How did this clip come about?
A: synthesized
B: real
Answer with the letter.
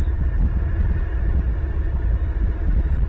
A